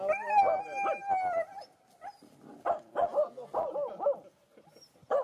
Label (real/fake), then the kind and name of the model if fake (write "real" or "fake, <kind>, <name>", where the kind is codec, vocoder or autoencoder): real